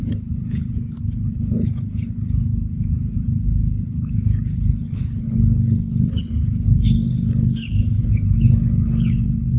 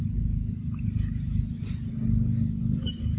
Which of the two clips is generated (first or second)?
first